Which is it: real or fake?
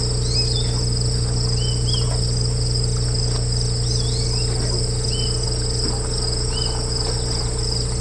real